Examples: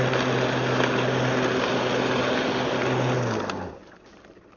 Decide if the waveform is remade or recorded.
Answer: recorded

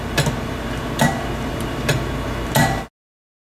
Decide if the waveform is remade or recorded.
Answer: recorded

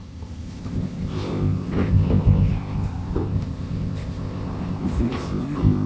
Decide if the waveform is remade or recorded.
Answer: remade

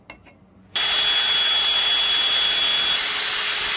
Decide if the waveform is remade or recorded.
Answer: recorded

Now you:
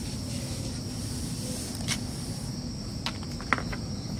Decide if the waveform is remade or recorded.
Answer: recorded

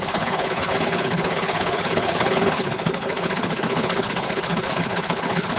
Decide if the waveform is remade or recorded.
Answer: remade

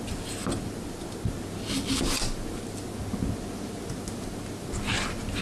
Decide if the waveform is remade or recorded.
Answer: recorded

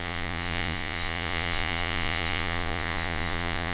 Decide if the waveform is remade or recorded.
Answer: remade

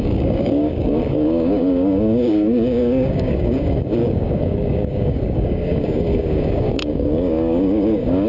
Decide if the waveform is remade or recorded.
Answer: remade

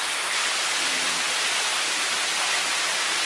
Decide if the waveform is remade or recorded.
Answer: recorded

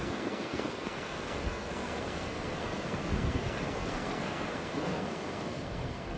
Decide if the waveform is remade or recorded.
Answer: remade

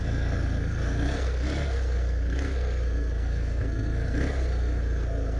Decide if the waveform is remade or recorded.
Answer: remade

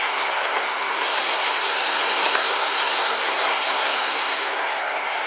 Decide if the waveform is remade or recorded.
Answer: remade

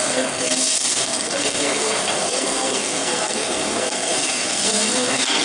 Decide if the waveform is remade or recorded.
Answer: remade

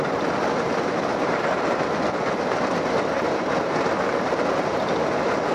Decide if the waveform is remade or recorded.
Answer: recorded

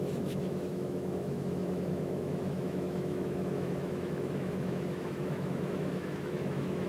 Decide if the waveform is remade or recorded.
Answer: remade